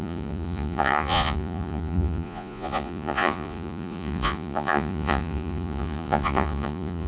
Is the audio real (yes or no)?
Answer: no